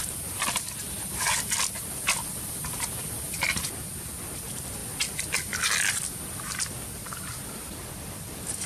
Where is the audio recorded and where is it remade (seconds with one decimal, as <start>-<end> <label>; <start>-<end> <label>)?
0.0-8.7 recorded